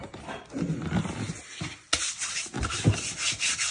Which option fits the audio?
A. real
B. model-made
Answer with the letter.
A